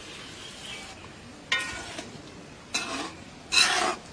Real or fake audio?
real